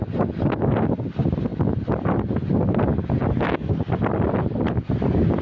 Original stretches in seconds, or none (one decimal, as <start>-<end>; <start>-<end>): 0.0-5.4